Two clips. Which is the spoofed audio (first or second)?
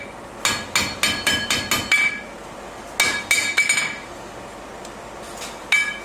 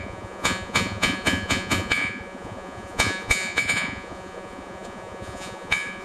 second